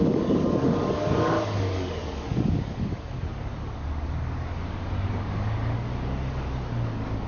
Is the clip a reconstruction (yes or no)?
yes